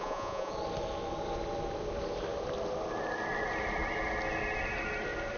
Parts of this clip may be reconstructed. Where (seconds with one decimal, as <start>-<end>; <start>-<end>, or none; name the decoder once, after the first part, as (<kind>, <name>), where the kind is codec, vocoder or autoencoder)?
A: 0.0-0.5 (vocoder, Vocos)